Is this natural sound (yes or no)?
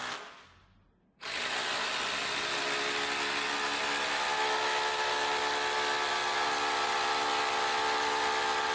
yes